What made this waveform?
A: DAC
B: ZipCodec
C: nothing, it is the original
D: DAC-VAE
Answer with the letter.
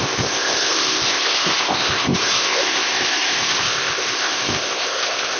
B